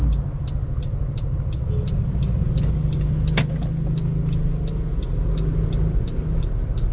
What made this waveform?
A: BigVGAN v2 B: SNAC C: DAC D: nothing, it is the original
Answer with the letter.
D